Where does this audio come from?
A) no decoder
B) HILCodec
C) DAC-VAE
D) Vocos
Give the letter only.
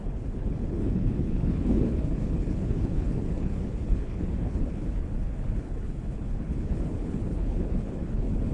B